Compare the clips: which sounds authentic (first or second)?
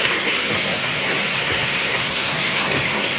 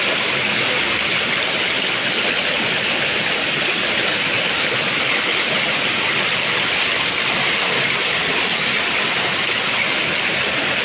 second